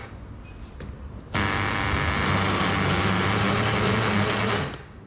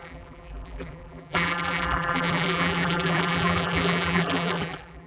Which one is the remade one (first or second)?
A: second